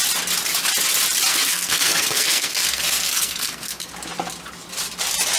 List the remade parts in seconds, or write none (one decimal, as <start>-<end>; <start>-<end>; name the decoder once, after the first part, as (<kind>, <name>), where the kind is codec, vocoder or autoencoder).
1.3-3.9 (codec, SNAC)

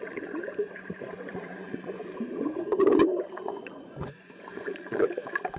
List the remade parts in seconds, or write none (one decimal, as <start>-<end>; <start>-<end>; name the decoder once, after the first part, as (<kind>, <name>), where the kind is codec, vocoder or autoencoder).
0.0-5.6 (vocoder, Vocos)